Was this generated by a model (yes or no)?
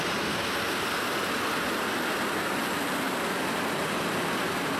no